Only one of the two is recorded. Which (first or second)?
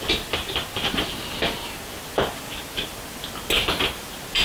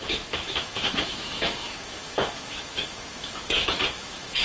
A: first